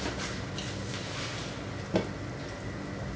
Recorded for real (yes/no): yes